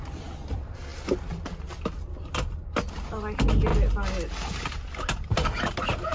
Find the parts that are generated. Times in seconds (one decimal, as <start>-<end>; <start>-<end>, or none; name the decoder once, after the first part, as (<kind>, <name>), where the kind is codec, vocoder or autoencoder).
none